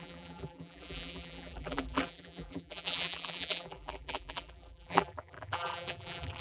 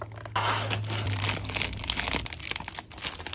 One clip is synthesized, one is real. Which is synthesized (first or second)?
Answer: first